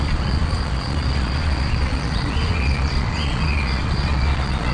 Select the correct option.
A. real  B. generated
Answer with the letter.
B